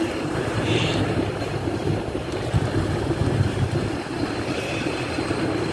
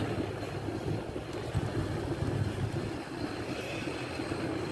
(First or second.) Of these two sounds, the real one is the second